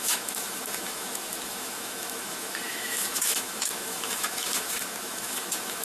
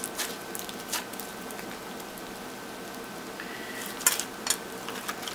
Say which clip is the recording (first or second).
second